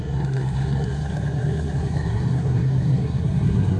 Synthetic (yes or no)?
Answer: yes